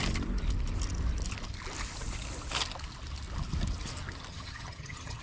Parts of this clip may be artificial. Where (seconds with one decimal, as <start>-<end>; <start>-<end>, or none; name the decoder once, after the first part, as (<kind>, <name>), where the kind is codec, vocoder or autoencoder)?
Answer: 4.3-5.2 (vocoder, HiFi-GAN)